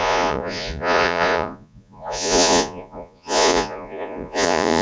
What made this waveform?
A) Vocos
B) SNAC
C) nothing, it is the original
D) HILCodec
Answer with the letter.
A